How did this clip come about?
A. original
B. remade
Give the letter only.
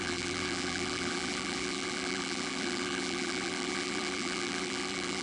B